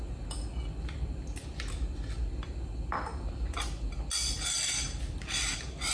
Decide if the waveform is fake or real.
real